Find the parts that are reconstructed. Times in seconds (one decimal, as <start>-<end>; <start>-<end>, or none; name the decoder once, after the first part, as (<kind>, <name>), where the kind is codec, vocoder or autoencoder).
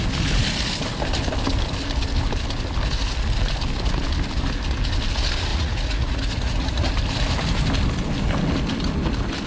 5.5-6.9 (vocoder, Vocos)